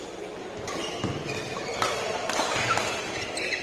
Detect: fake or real real